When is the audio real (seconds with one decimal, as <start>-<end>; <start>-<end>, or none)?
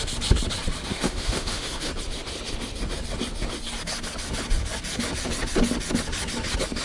0.0-0.9; 1.9-6.8